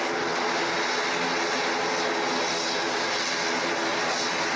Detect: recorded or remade recorded